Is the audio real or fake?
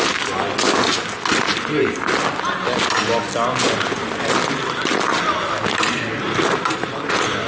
real